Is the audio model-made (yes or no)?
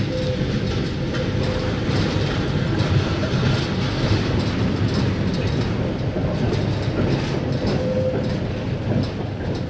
no